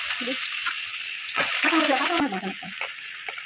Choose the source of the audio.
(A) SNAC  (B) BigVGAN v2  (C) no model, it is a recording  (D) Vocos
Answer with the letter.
D